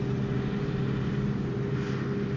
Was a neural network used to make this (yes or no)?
no